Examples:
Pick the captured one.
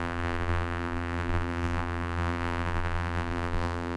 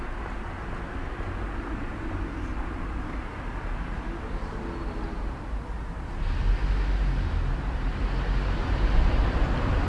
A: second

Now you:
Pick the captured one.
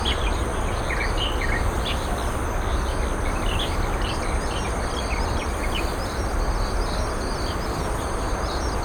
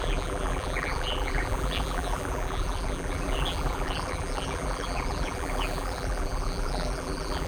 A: first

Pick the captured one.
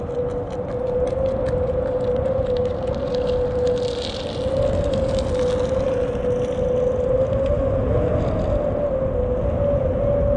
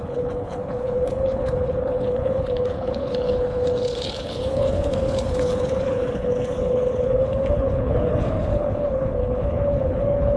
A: first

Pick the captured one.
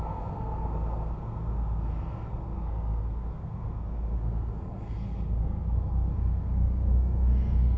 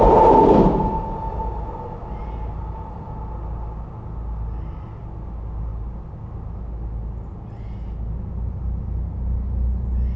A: second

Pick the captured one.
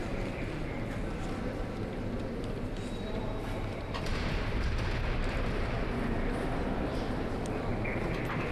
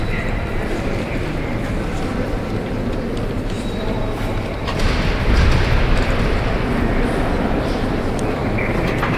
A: first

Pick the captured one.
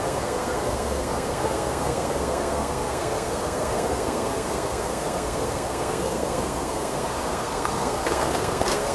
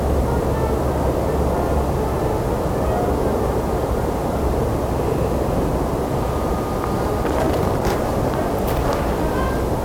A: second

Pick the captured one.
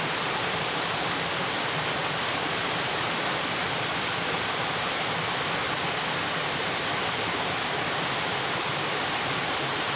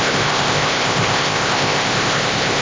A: first